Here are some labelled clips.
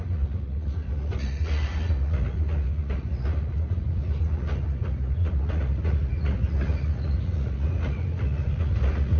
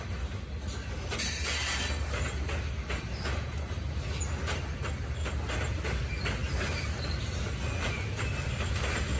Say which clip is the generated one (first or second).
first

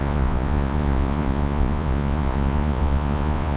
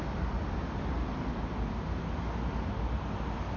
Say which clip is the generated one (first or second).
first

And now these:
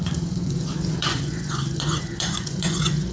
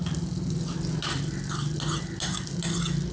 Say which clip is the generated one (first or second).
first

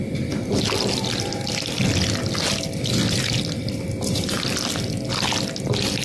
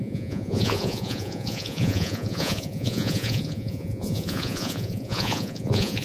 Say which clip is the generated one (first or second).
second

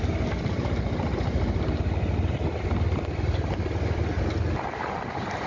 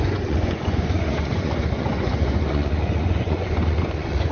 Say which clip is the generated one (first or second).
second